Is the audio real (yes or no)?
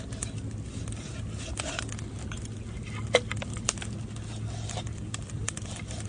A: yes